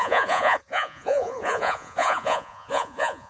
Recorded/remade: remade